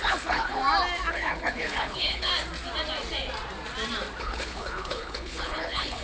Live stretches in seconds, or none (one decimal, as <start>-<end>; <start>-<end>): 0.6-1.1; 2.3-4.2